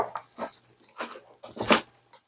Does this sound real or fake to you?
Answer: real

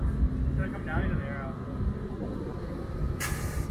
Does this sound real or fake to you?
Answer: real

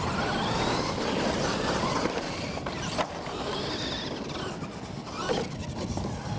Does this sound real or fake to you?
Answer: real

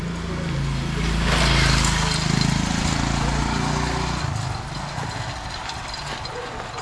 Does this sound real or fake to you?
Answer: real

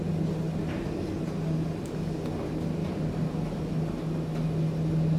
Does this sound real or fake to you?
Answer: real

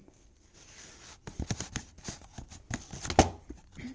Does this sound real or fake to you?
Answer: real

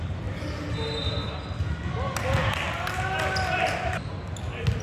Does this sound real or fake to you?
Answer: real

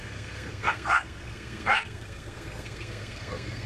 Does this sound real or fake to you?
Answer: fake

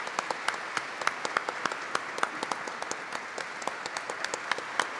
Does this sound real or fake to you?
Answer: real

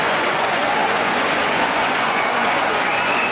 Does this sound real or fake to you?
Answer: fake